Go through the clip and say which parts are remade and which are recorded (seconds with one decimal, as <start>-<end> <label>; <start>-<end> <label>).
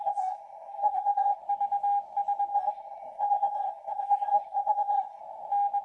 0.0-1.4 remade; 1.4-2.5 recorded; 2.5-5.2 remade; 5.2-5.8 recorded